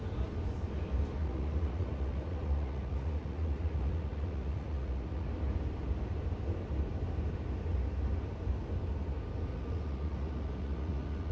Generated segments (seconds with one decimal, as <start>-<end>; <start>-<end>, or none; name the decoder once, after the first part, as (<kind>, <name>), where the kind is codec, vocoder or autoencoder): 1.2-5.3 (vocoder, Vocos); 9.5-11.3